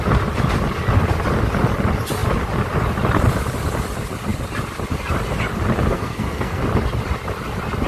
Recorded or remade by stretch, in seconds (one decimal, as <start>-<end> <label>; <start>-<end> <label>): 0.0-5.9 recorded; 5.9-6.6 remade; 6.6-7.9 recorded